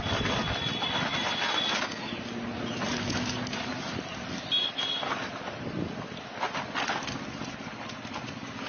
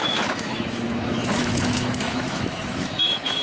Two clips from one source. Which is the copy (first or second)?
second